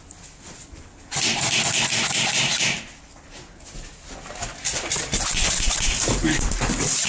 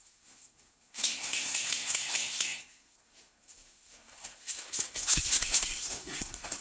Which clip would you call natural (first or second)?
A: first